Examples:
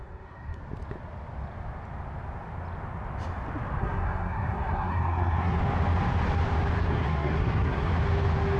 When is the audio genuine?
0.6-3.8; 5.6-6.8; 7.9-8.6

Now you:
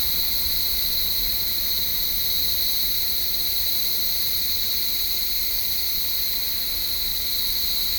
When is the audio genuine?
1.9-2.5; 7.1-8.0

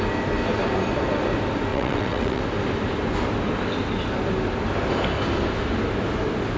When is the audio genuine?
0.0-1.7; 2.4-6.6

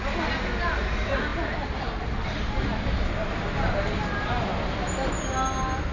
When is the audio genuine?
0.0-5.9